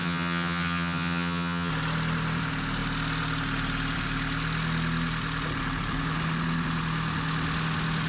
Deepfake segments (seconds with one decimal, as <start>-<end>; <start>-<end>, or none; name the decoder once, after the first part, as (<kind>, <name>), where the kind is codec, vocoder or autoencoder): 0.0-1.7 (vocoder, HiFi-GAN)